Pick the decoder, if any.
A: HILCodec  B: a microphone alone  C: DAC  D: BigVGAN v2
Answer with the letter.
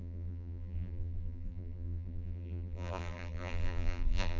D